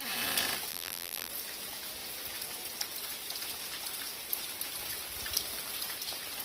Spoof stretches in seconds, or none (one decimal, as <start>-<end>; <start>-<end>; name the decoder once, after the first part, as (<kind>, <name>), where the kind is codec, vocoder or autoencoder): 0.7-1.3 (vocoder, BigVGAN v2)